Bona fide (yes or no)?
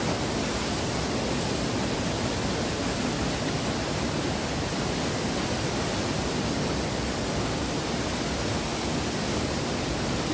yes